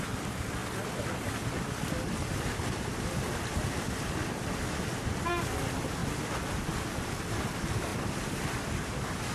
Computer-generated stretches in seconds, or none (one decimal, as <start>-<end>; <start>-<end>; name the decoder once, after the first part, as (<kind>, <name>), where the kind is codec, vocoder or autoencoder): none